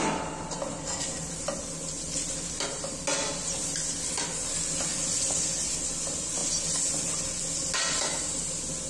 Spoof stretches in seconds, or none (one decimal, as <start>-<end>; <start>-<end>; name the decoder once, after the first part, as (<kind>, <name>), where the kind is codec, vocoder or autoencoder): none